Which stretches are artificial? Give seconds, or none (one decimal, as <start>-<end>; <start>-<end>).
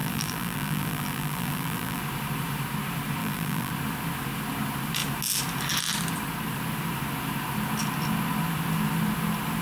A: 0.0-2.0; 3.2-3.7